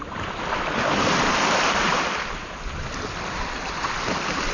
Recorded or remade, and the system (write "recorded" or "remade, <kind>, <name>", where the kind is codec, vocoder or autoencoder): recorded